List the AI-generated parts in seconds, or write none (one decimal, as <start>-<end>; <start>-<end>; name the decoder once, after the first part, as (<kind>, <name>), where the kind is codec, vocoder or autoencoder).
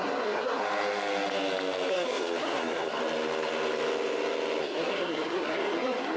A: 0.0-0.6 (codec, SNAC); 1.9-3.0; 4.6-6.2